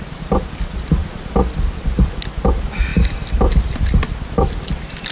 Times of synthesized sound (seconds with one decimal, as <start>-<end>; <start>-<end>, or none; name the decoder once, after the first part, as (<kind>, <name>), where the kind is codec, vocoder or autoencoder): none

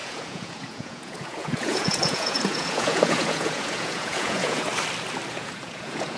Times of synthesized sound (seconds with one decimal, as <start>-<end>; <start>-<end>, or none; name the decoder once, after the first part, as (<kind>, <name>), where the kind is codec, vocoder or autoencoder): 0.0-4.7 (vocoder, Vocos); 5.3-6.2

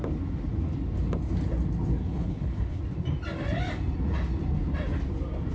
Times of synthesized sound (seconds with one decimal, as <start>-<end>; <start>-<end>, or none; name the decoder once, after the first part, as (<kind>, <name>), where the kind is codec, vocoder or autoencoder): 2.0-2.8 (codec, HILCodec)

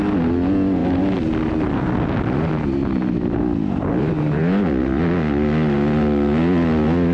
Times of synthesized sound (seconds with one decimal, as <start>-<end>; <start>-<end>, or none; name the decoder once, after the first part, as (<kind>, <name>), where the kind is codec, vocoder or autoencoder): none

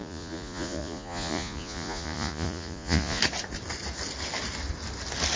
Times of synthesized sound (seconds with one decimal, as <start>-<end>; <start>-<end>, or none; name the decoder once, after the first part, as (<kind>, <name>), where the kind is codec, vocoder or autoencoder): 0.0-3.2 (vocoder, Vocos)

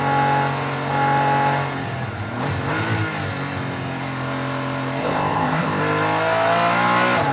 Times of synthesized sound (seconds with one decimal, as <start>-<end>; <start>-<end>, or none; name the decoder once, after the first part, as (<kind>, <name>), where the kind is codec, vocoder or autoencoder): 5.0-5.8 (codec, ZipCodec)

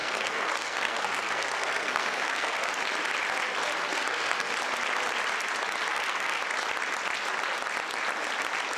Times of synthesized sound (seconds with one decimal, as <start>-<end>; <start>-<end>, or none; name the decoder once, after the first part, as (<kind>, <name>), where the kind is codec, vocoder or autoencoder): 0.0-2.7 (codec, SNAC); 3.9-4.5; 5.9-6.4

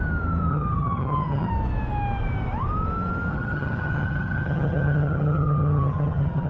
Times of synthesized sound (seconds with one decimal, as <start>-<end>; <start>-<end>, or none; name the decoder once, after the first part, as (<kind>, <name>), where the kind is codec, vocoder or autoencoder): 0.5-1.5 (vocoder, HiFi-GAN); 3.3-6.5